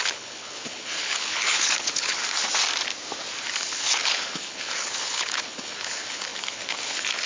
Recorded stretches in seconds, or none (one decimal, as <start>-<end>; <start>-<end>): 2.2-3.6